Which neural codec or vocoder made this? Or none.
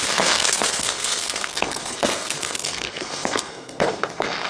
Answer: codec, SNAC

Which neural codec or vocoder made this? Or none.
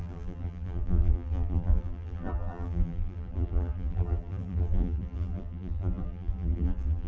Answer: vocoder, BigVGAN v2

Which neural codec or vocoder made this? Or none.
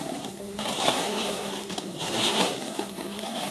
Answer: codec, SNAC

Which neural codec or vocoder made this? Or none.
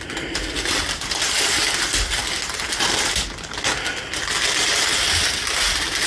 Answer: none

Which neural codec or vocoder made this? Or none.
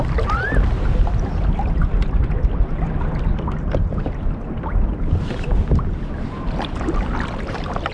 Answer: none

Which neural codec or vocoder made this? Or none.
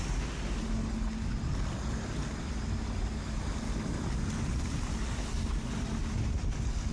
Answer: none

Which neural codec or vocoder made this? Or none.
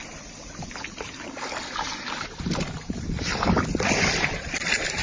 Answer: none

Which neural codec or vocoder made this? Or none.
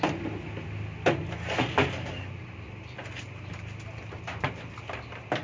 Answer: none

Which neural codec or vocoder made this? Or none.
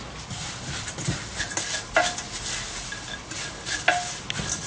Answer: none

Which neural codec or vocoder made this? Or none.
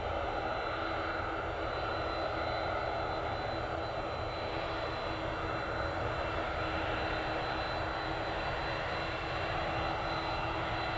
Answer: none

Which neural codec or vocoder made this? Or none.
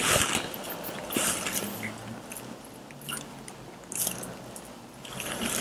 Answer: none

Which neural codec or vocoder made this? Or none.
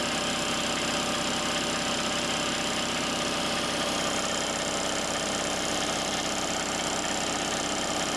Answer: none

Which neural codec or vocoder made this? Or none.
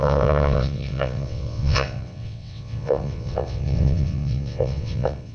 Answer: vocoder, WaveNeXt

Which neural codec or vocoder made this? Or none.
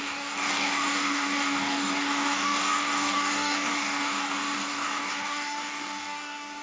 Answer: codec, DAC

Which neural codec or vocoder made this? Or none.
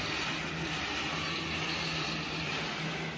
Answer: none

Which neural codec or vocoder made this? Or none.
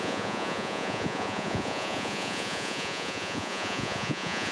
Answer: vocoder, Vocos